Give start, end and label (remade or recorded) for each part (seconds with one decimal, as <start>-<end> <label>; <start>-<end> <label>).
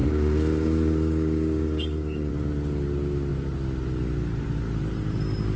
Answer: 0.0-2.3 remade; 2.3-5.6 recorded